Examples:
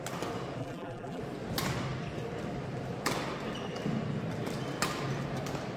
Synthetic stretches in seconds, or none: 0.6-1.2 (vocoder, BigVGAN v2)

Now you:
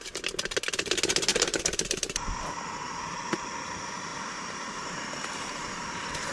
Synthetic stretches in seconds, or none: 1.3-2.5 (vocoder, BigVGAN v2); 4.1-5.1; 5.6-6.3

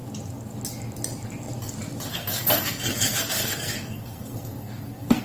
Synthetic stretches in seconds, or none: 2.1-5.2 (codec, SNAC)